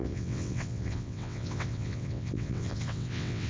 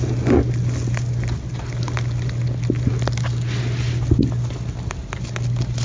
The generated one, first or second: first